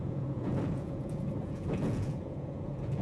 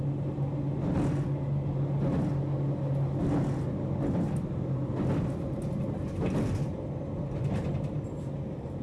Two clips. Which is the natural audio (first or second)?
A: second